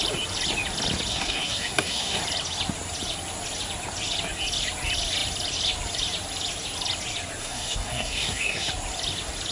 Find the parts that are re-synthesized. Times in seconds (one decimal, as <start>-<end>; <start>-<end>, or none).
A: 1.1-2.2; 7.4-8.7